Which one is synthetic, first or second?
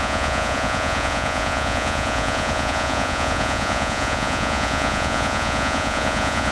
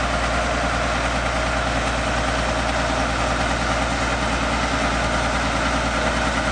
first